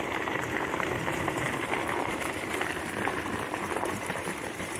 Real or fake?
fake